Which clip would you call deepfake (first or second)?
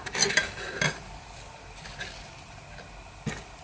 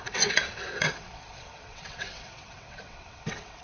second